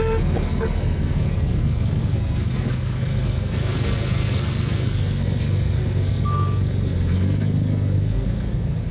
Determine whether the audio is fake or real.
fake